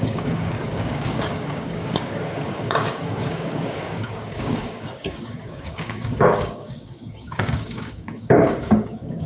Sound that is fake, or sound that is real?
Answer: fake